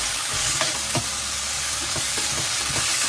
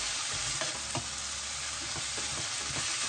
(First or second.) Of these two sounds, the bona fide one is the second